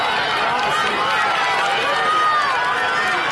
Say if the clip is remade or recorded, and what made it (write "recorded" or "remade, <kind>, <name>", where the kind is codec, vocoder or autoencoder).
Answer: recorded